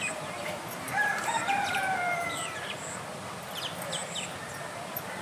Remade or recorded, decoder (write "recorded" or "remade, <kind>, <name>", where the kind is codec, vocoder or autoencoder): remade, vocoder, BigVGAN v2